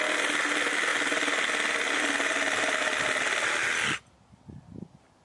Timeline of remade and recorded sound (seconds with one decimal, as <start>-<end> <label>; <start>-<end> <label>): 0.0-5.2 recorded